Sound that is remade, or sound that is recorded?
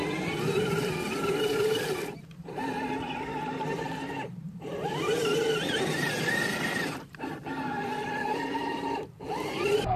remade